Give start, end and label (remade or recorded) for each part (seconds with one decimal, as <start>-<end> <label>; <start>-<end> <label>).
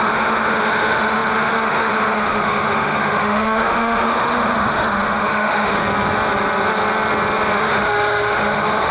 0.0-5.8 remade; 5.8-7.6 recorded; 7.6-8.9 remade